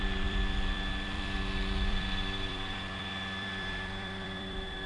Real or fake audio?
fake